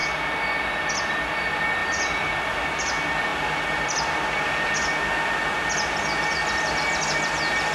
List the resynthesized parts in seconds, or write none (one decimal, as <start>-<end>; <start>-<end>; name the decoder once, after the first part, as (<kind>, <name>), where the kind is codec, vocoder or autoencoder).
1.8-2.3 (vocoder, BigVGAN v2); 3.3-4.7